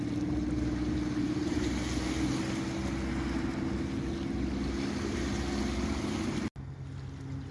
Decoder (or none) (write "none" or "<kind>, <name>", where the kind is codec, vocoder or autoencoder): none